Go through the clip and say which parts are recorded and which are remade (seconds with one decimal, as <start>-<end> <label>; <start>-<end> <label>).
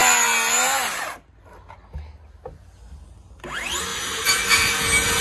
0.0-1.4 remade; 1.4-3.9 recorded; 3.9-4.8 remade; 4.8-5.2 recorded